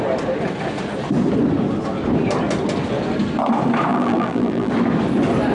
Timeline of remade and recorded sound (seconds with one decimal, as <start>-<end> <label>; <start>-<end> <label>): 0.0-3.9 recorded; 3.9-4.7 remade; 4.7-5.5 recorded